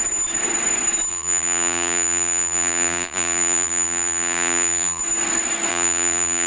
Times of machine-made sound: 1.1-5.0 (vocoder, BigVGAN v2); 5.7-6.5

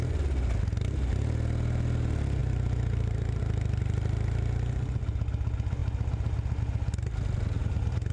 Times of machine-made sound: 2.4-3.4 (vocoder, BigVGAN v2)

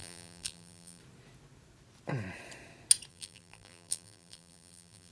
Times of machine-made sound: 0.0-1.0 (vocoder, BigVGAN v2); 3.1-5.1